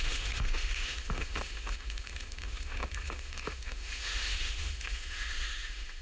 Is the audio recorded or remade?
remade